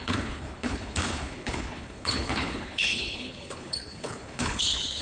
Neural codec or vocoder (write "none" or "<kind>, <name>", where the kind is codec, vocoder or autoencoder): codec, HILCodec